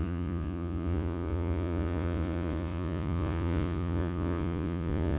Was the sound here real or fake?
fake